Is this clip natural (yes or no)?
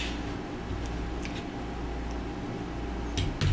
yes